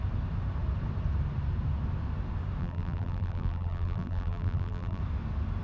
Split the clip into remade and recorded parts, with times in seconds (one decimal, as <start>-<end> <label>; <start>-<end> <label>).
0.0-2.6 recorded; 2.6-5.0 remade; 5.0-5.6 recorded